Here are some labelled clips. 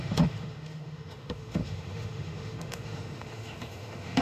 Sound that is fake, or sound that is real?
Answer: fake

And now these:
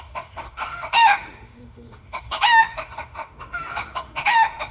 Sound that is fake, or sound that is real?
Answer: fake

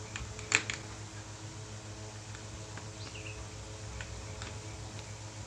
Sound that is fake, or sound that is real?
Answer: real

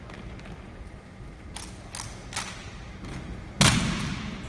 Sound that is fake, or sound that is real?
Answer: real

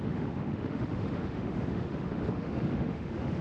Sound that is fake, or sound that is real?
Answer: fake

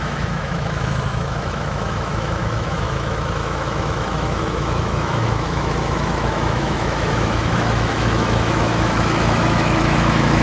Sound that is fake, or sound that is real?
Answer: fake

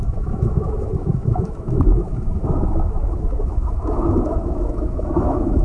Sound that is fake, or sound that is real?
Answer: fake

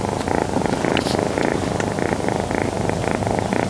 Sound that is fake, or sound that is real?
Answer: real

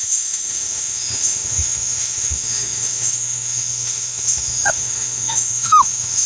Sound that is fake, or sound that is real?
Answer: fake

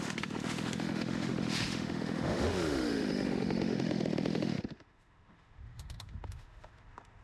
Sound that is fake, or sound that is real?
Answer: fake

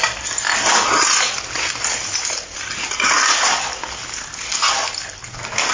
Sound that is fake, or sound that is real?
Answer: real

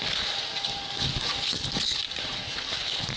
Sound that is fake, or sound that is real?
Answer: real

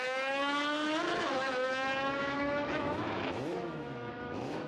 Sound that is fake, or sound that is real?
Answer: fake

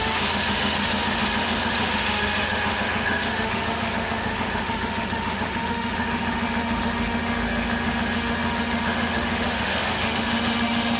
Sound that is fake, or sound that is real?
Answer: fake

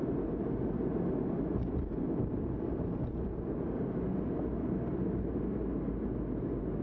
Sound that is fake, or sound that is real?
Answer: real